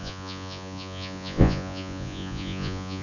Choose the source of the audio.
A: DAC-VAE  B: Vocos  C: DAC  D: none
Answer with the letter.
B